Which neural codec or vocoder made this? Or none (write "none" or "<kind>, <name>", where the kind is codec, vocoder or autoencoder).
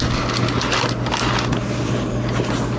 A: none